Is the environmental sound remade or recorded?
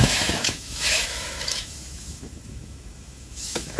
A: remade